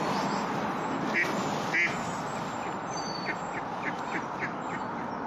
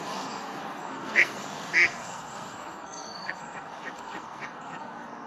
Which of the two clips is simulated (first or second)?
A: second